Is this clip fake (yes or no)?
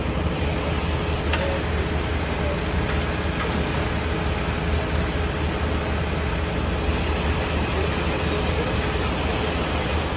no